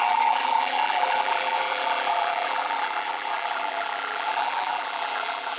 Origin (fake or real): fake